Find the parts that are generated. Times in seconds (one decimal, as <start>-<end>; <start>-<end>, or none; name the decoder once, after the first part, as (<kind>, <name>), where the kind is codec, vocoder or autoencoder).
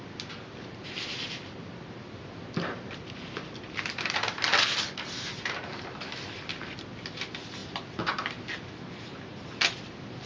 none